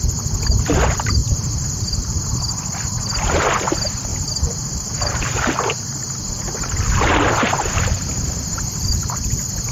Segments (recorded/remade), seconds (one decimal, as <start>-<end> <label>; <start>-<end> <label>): 0.0-1.2 recorded; 1.2-2.2 remade; 2.2-4.1 recorded; 4.1-8.9 remade; 8.9-9.7 recorded